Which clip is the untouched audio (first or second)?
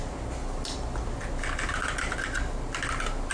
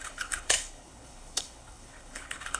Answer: first